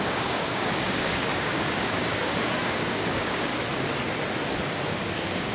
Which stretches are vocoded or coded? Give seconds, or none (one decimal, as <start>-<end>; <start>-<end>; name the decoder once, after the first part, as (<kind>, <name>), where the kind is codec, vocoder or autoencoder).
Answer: 0.0-3.5 (codec, DAC); 4.9-5.5

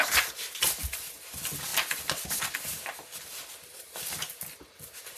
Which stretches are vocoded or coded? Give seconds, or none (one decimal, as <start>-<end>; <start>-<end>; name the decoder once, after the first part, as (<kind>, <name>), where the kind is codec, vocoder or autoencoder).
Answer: none

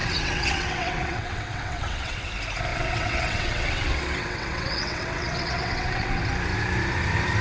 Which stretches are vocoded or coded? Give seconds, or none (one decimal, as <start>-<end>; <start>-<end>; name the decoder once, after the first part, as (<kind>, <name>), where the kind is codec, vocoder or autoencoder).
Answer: 0.0-2.3 (vocoder, WaveNeXt); 2.7-6.2

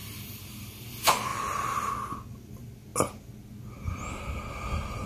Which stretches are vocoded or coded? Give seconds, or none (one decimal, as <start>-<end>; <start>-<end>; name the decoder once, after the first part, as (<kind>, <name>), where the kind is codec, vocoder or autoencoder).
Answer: 0.0-0.7 (vocoder, BigVGAN v2); 1.3-1.9

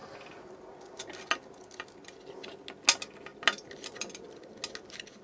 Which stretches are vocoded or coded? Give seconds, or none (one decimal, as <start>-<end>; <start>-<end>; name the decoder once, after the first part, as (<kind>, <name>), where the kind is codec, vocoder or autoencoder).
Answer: none